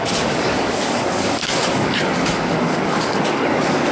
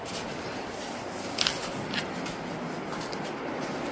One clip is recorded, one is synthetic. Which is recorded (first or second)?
second